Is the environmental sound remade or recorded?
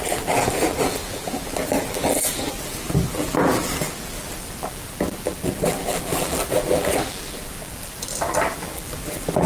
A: remade